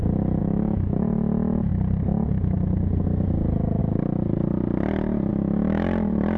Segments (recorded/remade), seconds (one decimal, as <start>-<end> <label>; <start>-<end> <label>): 0.0-0.4 recorded; 0.4-0.9 remade; 0.9-5.3 recorded; 5.3-6.4 remade